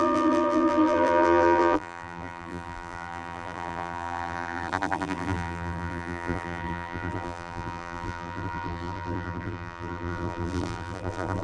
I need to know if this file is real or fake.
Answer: fake